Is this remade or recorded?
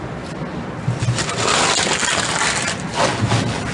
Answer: recorded